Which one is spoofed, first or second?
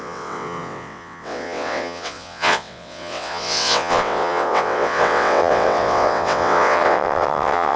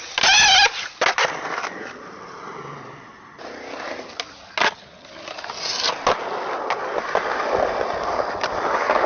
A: first